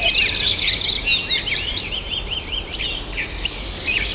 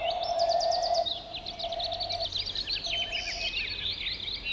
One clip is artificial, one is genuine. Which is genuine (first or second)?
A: second